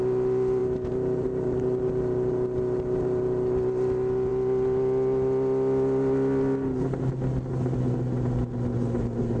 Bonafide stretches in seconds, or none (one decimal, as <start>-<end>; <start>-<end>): 0.0-9.4